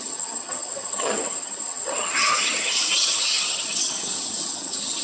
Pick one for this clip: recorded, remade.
remade